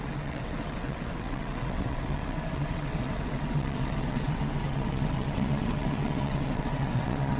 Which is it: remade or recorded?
remade